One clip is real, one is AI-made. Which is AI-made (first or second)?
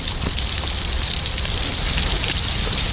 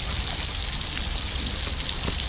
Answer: first